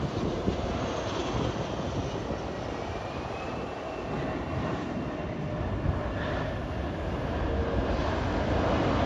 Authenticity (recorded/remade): recorded